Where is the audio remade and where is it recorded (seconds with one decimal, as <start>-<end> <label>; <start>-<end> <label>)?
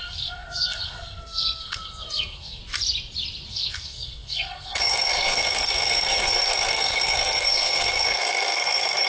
0.0-2.6 remade; 2.6-3.5 recorded; 3.5-9.1 remade